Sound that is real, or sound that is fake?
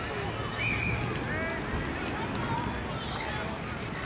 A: real